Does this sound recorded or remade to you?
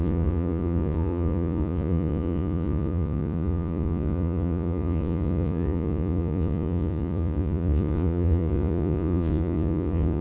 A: remade